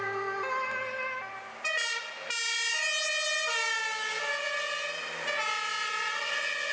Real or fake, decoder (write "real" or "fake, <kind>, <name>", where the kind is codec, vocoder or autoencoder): real